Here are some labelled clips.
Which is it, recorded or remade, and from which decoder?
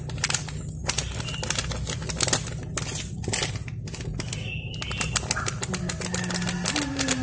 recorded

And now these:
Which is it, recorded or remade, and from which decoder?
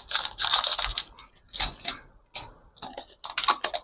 recorded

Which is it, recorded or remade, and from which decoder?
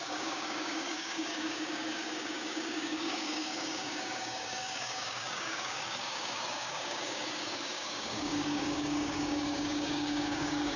remade, codec, DAC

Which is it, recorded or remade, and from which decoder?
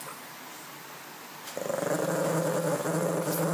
recorded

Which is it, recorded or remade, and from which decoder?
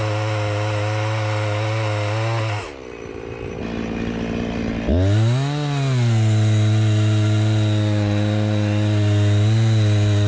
recorded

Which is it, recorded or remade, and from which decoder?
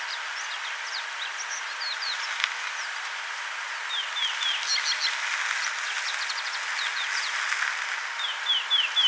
recorded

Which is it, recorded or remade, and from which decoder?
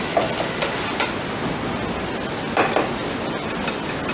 recorded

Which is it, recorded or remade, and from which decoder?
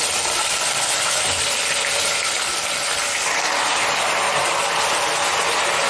recorded